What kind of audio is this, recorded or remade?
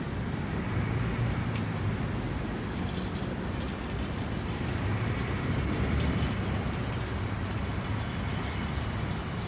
recorded